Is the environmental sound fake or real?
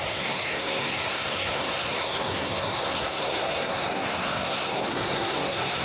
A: fake